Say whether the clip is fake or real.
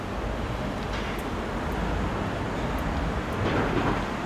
real